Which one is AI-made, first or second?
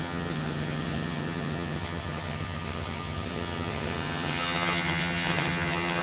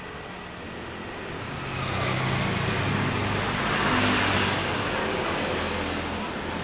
first